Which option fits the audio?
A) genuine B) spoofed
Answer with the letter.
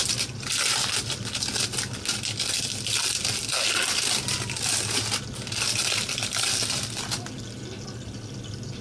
A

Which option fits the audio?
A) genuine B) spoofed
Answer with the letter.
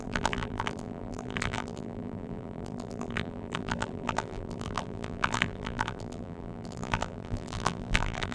B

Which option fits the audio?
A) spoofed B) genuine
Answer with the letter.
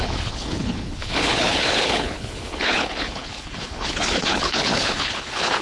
A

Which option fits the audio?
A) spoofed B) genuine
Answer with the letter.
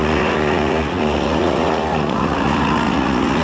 A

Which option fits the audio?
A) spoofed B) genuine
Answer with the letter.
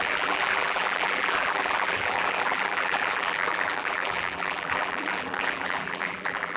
A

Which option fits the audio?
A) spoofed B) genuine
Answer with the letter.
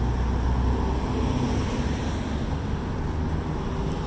B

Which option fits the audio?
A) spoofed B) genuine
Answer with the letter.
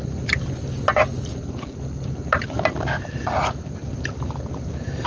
B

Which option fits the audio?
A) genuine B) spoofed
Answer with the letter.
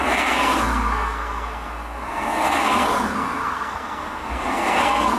B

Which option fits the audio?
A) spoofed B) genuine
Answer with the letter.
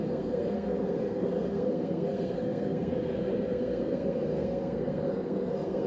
A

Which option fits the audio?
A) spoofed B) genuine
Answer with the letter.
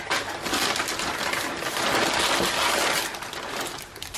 B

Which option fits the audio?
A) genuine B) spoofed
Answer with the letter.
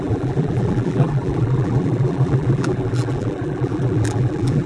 B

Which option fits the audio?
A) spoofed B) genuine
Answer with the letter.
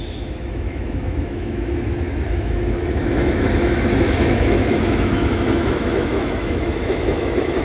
A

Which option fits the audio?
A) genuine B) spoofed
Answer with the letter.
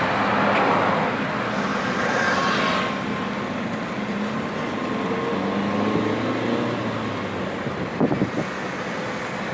A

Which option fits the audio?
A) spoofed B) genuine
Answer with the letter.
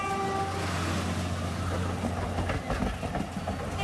B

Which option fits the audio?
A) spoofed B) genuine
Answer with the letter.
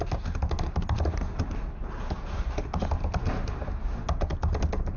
B